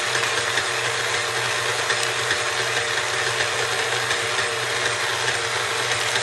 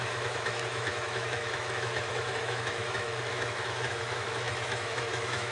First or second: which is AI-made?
second